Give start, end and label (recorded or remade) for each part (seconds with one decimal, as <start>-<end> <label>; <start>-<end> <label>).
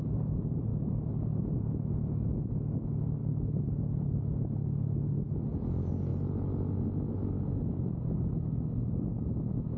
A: 0.0-9.8 recorded